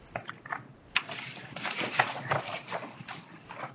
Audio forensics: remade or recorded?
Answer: recorded